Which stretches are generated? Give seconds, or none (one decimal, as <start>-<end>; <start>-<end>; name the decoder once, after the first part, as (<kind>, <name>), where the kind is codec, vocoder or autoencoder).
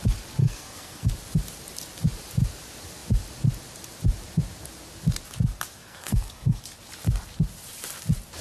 0.4-1.1 (codec, SNAC); 5.8-6.6